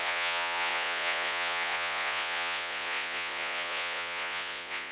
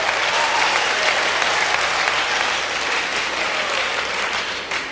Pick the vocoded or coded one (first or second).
first